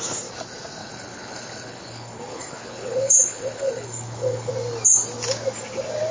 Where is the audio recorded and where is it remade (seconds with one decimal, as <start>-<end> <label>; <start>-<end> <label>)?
0.0-0.8 recorded; 0.8-4.5 remade; 4.5-6.1 recorded